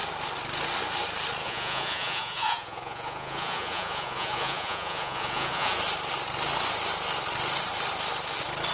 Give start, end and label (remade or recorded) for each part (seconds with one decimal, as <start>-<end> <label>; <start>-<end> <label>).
0.0-1.4 recorded; 1.4-5.8 remade; 5.8-8.7 recorded